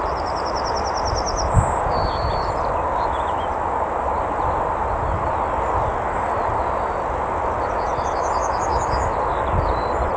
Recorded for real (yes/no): yes